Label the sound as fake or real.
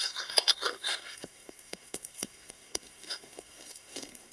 fake